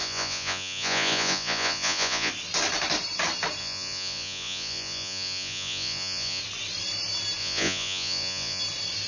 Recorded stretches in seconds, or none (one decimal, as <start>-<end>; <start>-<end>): 2.3-3.6; 6.4-7.4; 8.6-9.1